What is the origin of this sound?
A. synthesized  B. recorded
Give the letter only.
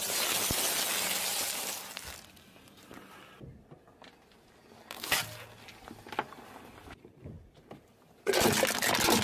B